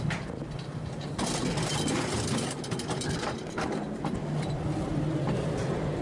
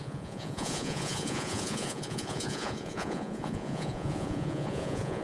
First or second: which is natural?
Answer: first